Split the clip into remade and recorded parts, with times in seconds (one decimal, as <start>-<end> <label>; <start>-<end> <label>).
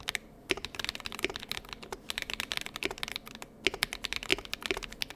0.0-5.2 recorded